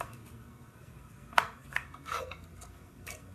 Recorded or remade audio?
remade